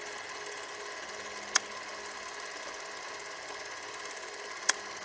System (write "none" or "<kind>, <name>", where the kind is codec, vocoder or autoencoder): none